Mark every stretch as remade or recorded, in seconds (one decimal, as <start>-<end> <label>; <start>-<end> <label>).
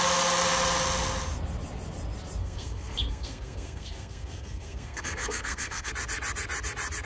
0.0-2.4 recorded; 2.4-5.9 remade; 5.9-7.1 recorded